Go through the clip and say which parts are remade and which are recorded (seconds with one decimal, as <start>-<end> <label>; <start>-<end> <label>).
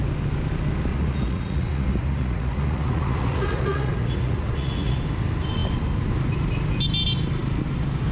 0.0-0.9 recorded; 0.9-5.0 remade; 5.0-8.1 recorded